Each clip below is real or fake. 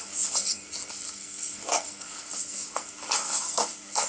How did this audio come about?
fake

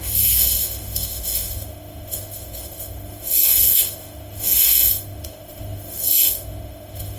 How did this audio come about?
fake